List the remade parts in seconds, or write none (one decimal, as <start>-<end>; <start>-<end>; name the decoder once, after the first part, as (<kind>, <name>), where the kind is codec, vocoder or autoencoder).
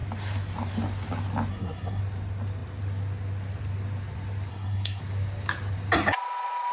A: 1.5-2.0 (codec, SNAC); 4.5-5.0